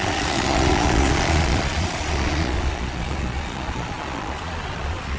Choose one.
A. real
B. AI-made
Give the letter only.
B